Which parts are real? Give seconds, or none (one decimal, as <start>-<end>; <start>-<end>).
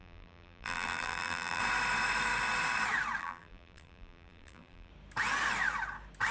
1.6-3.2; 4.9-6.3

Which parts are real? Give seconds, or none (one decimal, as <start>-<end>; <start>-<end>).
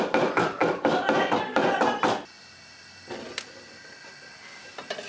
0.0-5.1